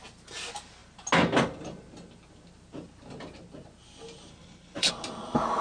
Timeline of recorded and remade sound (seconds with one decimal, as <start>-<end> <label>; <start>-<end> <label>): 0.0-4.3 recorded; 4.3-4.9 remade; 4.9-5.6 recorded